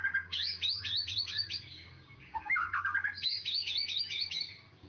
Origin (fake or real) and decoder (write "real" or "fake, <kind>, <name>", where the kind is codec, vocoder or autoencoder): fake, codec, DAC